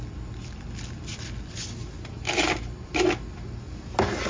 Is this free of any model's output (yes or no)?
yes